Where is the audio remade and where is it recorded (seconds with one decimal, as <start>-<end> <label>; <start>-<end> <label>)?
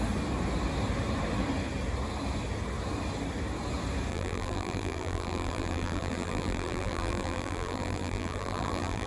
0.0-4.1 recorded; 4.1-9.1 remade